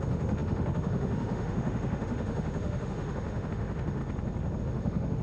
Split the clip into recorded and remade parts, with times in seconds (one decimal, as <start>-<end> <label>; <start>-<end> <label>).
0.0-4.0 remade; 4.0-4.6 recorded; 4.6-5.2 remade